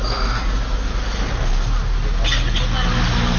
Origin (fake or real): real